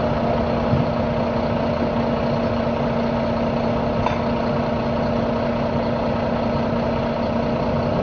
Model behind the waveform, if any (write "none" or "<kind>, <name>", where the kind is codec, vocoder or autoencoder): none